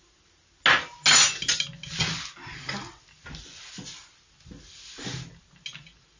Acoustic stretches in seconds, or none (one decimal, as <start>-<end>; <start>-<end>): 0.0-6.2